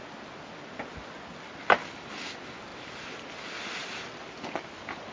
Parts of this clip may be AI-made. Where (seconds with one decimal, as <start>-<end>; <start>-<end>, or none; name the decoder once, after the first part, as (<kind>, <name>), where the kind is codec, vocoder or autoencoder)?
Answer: none